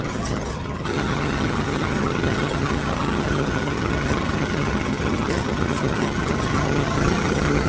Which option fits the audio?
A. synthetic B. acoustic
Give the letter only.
A